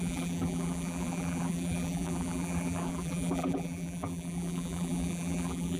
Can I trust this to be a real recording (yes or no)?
no